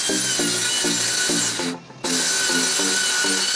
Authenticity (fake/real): real